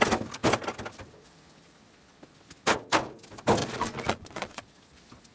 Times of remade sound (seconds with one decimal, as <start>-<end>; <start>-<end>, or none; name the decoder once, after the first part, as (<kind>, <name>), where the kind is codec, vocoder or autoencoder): 3.6-4.6 (vocoder, Vocos)